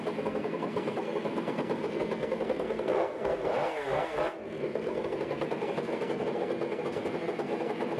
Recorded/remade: remade